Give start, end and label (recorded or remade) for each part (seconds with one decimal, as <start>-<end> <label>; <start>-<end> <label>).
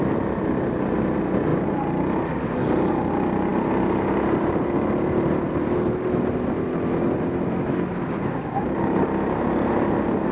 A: 0.0-10.3 recorded